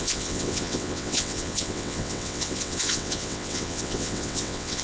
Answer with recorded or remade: remade